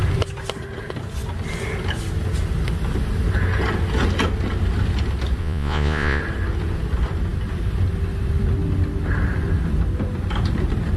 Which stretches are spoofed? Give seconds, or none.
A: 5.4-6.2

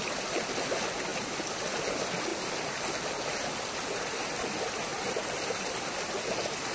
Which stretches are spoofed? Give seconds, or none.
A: 4.9-5.9

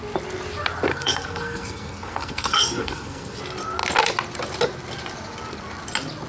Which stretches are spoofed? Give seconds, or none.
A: 0.9-3.4

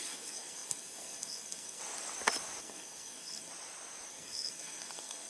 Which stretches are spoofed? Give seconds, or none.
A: 0.0-1.8; 2.6-3.5; 4.1-5.3

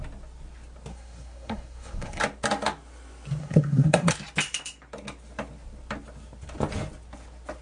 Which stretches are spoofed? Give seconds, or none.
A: 0.9-2.2; 3.4-4.1

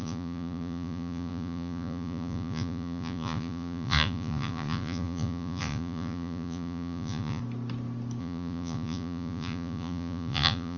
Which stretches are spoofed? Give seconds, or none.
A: 0.0-7.4; 8.2-10.8

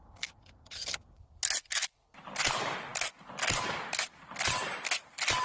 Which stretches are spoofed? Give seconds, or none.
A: none

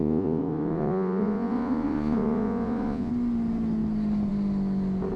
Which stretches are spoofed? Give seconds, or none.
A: 0.0-3.1